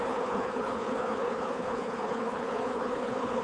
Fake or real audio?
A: fake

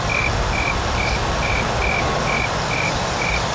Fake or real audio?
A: real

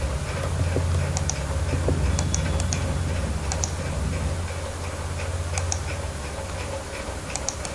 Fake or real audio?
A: real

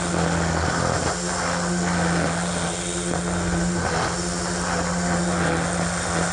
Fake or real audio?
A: real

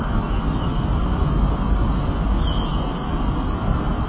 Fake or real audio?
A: real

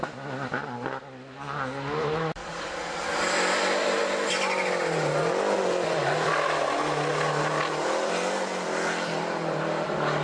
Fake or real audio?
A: real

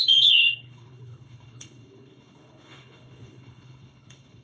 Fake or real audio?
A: fake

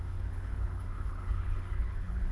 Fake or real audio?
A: fake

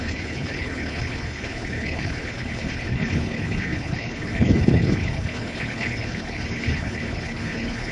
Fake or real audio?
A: fake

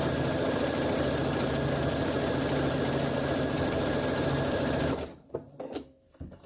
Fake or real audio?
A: real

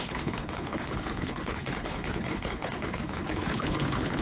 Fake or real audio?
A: fake